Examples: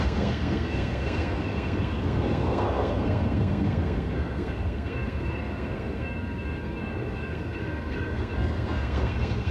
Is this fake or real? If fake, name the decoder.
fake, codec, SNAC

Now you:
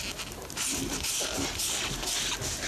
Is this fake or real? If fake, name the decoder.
real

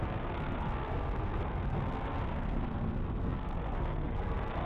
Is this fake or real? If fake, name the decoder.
fake, codec, SNAC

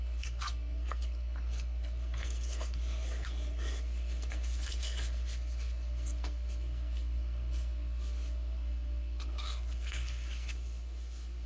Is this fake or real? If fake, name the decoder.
fake, codec, SNAC